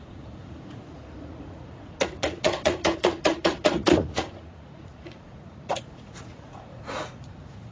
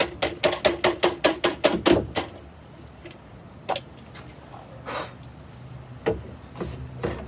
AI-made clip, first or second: first